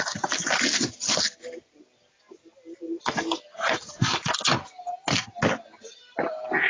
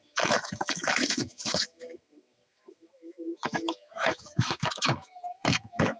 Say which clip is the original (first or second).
first